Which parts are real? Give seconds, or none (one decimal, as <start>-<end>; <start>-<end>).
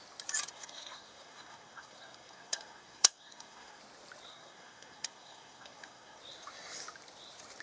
0.0-0.5; 3.8-4.3; 6.2-7.6